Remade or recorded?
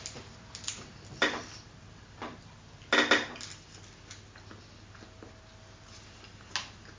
recorded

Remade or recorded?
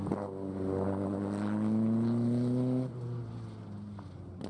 recorded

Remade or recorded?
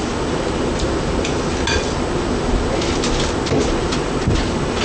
recorded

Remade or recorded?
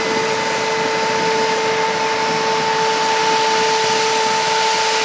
recorded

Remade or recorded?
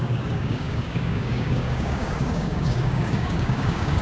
remade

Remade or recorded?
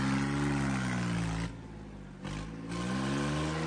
recorded